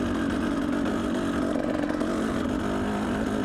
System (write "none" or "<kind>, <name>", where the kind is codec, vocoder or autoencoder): none